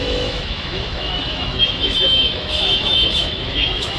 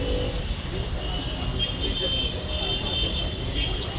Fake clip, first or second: first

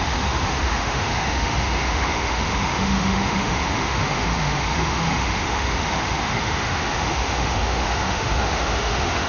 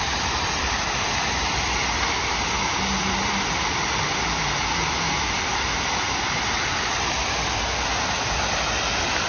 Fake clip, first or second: first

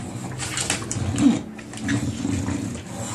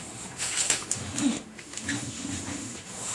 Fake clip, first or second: second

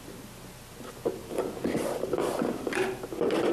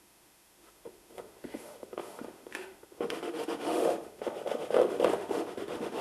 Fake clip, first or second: second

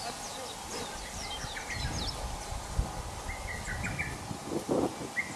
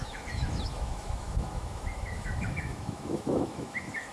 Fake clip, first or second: second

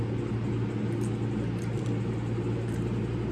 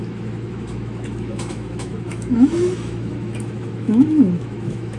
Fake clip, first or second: second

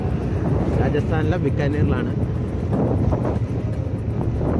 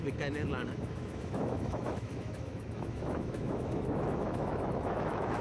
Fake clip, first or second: second